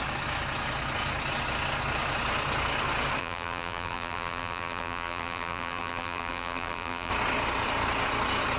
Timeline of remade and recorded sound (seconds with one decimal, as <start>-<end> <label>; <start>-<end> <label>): 0.0-3.2 recorded; 3.2-7.1 remade; 7.1-8.6 recorded